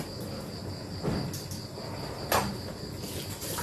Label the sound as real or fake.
real